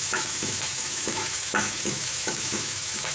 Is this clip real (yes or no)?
no